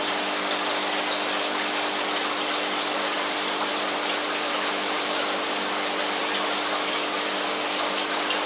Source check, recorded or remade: remade